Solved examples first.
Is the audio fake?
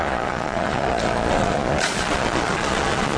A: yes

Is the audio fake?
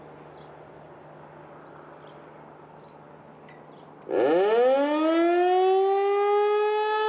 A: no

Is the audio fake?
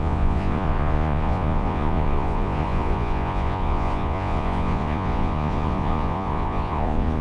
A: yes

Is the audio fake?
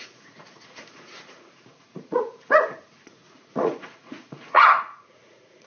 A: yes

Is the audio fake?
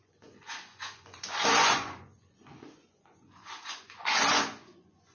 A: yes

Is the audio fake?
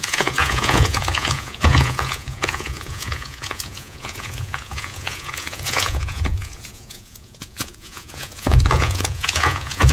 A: yes